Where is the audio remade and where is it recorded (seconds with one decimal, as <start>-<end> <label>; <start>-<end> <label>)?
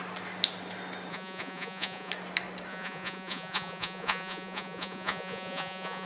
0.0-1.1 recorded; 1.1-2.1 remade; 2.1-2.7 recorded; 2.7-6.1 remade